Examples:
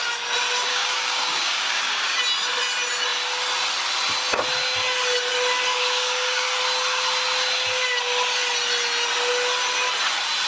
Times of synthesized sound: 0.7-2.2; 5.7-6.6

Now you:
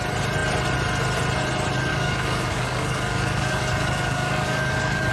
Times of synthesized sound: 1.9-5.1